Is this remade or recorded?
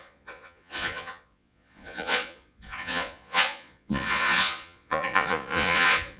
remade